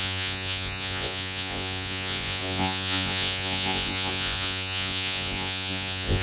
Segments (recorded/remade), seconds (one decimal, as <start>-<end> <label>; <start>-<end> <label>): 0.0-6.2 remade